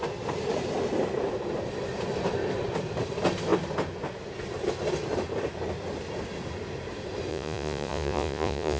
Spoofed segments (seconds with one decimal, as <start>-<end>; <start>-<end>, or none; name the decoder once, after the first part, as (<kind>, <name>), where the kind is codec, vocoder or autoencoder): 7.3-8.8 (vocoder, Vocos)